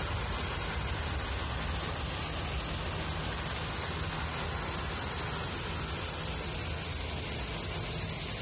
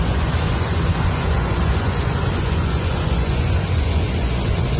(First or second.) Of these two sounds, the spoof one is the second